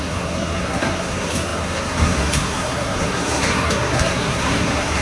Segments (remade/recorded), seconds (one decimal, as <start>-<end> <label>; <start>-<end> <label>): 0.0-5.0 remade